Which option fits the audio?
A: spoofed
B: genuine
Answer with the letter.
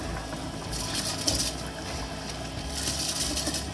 B